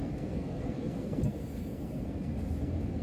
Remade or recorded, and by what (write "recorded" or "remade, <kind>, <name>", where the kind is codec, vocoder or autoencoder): remade, codec, SNAC